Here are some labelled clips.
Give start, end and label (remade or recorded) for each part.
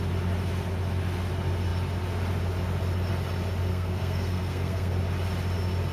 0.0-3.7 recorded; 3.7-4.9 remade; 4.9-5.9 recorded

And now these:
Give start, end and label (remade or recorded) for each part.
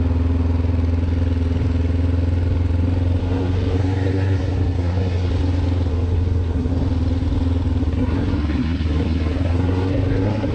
0.0-3.2 recorded; 3.2-5.3 remade; 5.3-5.9 recorded; 5.9-6.7 remade; 6.7-7.8 recorded; 7.8-10.5 remade